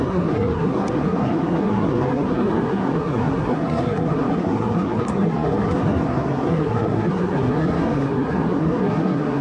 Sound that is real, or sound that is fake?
fake